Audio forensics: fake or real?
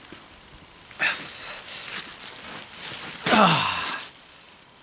real